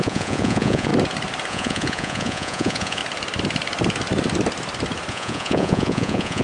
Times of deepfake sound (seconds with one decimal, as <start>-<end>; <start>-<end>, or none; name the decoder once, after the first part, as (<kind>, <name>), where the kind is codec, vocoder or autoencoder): 0.0-0.9 (vocoder, Vocos); 1.5-3.0; 5.1-6.4